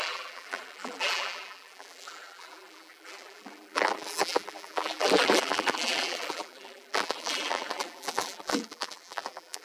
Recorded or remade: remade